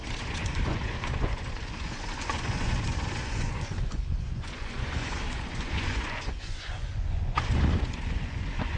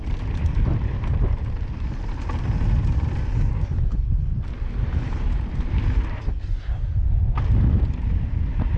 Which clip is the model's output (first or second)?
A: first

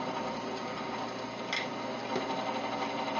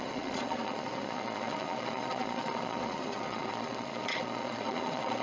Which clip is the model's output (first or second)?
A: second